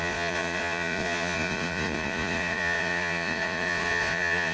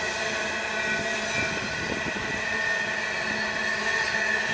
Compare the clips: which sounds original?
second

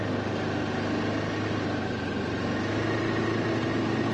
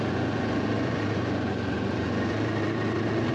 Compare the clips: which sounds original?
first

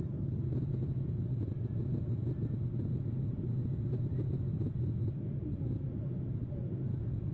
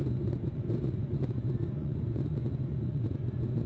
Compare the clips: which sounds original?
first